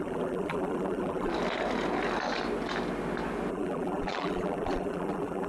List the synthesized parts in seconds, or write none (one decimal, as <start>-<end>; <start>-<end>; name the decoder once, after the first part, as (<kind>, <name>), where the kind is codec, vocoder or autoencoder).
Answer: 0.0-1.3 (vocoder, BigVGAN v2); 3.5-5.5